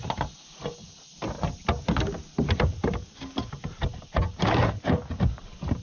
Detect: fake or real real